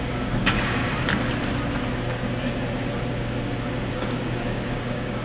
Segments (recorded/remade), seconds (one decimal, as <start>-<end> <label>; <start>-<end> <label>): 0.0-0.8 remade; 0.8-3.9 recorded; 3.9-5.2 remade